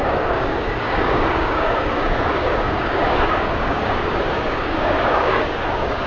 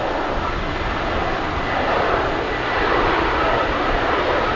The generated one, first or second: first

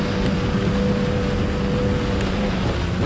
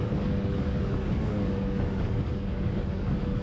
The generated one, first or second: second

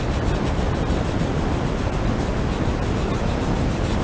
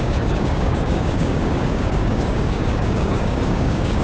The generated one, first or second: second